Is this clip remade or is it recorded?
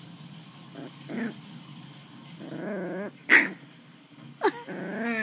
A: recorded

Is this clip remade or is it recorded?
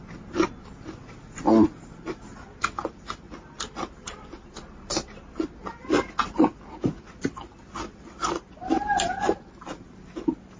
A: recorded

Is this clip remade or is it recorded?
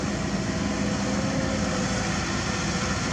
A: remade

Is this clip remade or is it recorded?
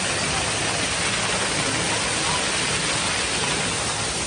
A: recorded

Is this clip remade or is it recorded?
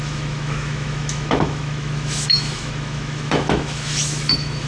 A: remade